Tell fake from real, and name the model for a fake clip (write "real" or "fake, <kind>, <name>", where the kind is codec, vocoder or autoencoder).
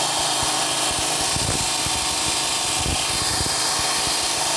real